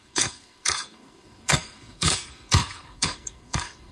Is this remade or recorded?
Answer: remade